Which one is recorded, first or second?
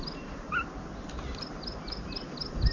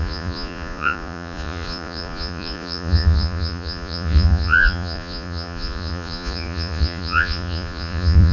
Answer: first